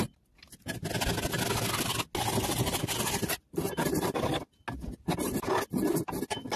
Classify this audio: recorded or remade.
recorded